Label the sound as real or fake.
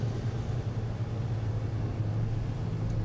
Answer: real